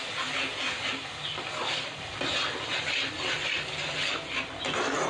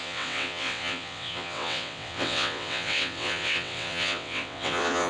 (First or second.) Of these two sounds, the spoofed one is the second